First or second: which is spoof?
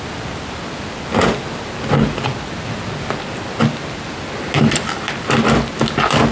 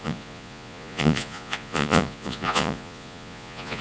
second